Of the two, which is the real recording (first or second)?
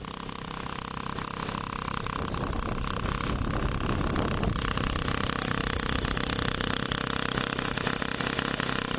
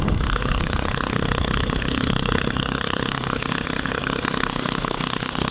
first